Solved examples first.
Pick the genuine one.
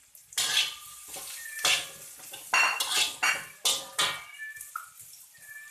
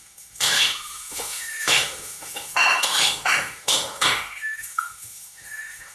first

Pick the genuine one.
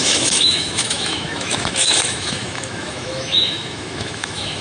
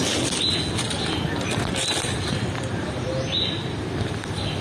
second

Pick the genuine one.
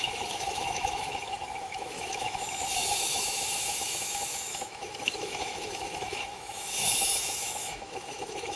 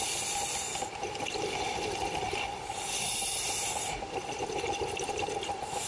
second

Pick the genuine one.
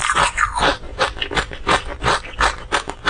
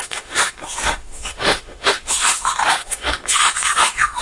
first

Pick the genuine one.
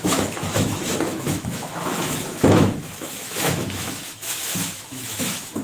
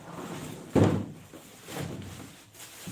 second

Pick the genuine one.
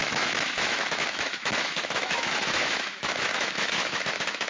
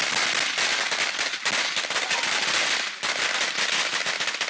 second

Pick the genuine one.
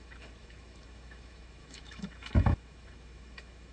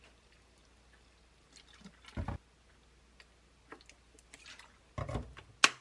second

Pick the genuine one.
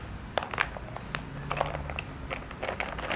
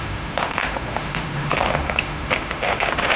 first